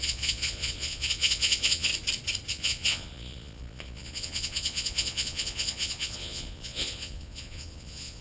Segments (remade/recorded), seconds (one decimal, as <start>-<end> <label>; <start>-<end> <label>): 0.0-1.9 remade; 1.9-2.5 recorded; 2.5-8.2 remade